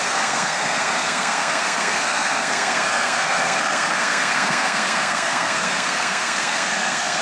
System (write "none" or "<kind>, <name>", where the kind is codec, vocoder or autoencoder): codec, SNAC